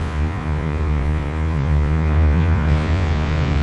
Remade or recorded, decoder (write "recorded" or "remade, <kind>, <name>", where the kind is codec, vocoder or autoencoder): remade, vocoder, Vocos